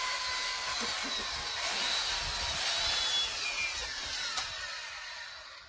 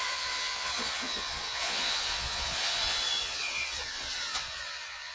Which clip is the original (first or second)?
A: first